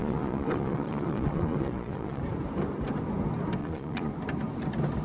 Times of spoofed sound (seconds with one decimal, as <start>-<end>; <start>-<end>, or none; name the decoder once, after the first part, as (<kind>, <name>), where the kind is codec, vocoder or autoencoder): 0.0-2.2 (vocoder, Vocos); 3.6-4.1